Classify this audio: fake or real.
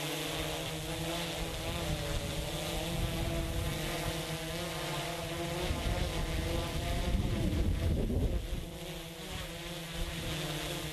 real